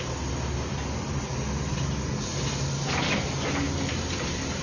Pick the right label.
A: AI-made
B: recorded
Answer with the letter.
B